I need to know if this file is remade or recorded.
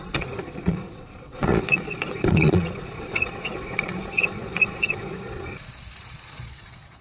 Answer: remade